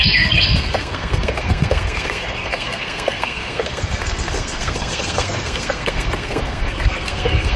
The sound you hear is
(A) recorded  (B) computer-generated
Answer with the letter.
B